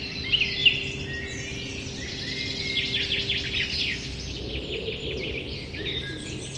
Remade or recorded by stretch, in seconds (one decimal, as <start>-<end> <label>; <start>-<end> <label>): 0.0-6.6 recorded